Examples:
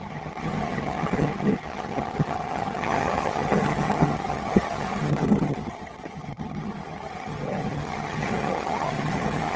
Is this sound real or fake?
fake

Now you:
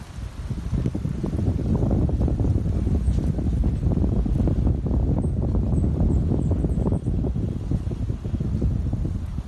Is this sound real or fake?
real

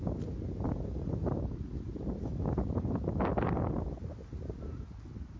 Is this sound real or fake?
real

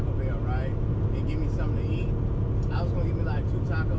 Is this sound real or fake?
real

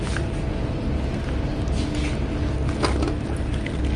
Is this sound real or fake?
real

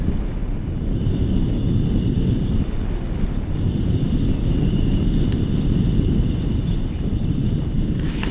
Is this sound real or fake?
real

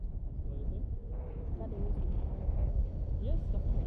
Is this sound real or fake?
real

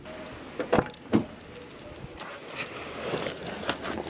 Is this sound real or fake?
real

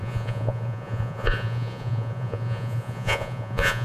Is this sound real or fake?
fake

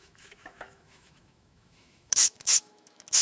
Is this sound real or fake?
fake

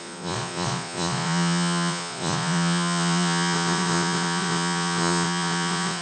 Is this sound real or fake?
fake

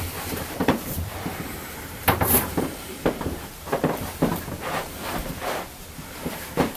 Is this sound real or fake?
fake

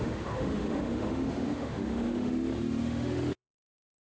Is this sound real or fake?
fake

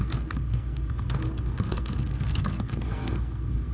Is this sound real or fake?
fake